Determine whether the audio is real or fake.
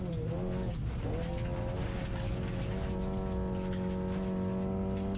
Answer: real